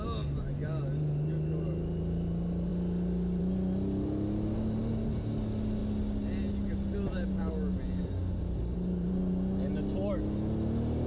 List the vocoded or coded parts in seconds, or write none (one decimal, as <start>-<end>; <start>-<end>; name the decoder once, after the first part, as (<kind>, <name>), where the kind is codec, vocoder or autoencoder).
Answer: none